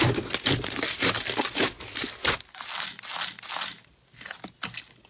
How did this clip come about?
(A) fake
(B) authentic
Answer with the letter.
B